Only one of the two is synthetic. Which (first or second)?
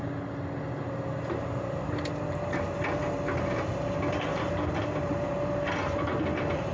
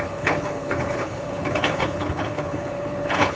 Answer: second